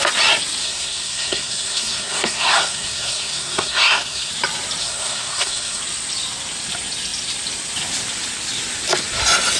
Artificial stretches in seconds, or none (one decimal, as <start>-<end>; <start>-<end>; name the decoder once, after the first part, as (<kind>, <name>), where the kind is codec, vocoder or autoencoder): 0.6-4.3 (codec, SNAC); 4.8-5.8